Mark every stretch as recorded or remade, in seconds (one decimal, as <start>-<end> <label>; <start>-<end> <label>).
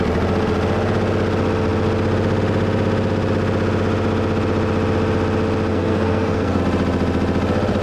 0.0-5.7 recorded; 5.7-6.6 remade; 6.6-7.8 recorded